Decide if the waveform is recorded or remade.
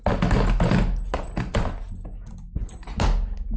recorded